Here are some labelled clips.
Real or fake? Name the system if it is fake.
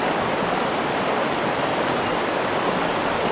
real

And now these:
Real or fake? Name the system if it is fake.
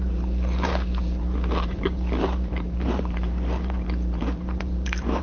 fake, vocoder, BigVGAN v2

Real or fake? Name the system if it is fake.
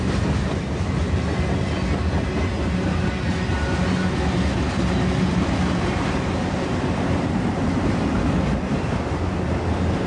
real